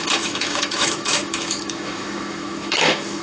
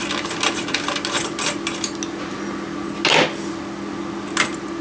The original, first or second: second